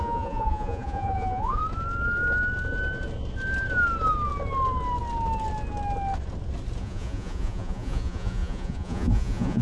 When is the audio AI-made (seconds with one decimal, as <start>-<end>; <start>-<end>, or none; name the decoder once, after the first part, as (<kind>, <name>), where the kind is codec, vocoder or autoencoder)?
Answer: 0.0-1.6 (vocoder, Vocos); 6.8-9.6